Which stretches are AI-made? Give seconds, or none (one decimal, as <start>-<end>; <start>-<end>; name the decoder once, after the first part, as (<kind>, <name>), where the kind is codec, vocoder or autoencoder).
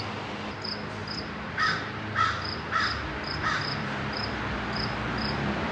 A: 1.0-4.4 (vocoder, BigVGAN v2)